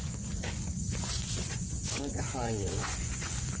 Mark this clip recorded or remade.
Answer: remade